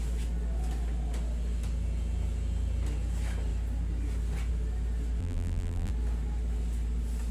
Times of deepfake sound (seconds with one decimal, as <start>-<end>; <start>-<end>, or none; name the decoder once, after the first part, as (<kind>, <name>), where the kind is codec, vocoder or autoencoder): 5.2-5.9 (vocoder, BigVGAN v2)